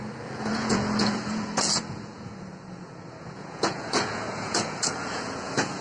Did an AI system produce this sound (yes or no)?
yes